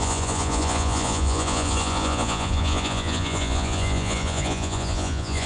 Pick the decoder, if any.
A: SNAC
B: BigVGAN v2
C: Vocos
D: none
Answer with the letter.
C